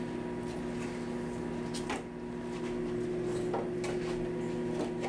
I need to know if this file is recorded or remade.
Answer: recorded